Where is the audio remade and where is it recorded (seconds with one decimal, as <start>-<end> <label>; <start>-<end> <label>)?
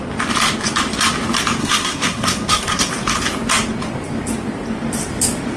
0.0-1.6 recorded; 1.6-2.9 remade; 2.9-5.6 recorded